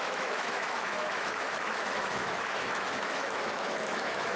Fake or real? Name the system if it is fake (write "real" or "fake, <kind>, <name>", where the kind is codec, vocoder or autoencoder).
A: fake, autoencoder, DAC-VAE